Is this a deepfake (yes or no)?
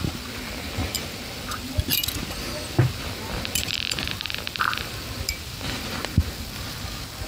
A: yes